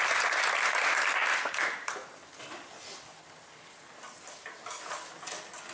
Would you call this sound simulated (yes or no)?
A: no